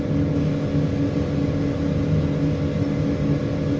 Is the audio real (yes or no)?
yes